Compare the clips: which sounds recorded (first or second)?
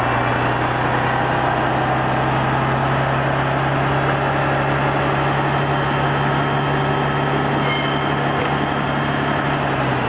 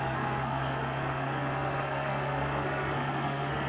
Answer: first